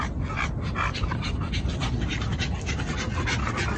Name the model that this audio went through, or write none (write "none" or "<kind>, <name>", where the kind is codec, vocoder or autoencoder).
none